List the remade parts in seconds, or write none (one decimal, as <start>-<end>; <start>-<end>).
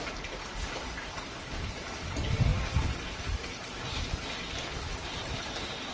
none